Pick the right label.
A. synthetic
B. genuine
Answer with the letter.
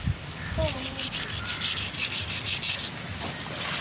B